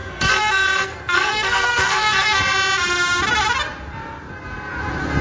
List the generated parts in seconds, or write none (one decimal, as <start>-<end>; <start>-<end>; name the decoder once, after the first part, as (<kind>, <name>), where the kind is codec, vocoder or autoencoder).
0.0-2.4 (codec, SNAC)